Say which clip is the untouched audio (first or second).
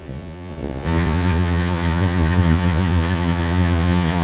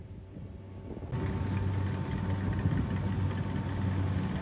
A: second